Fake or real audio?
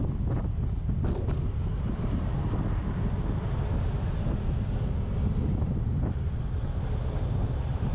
real